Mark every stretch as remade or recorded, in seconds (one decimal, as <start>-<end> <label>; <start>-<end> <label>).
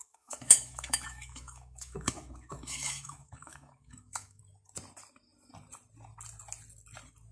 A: 0.0-4.4 remade; 4.4-7.3 recorded